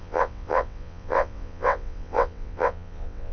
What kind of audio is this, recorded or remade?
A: remade